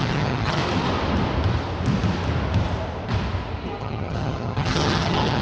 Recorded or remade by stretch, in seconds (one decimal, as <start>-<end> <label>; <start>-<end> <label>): 0.0-0.6 remade; 0.6-3.8 recorded; 3.8-5.4 remade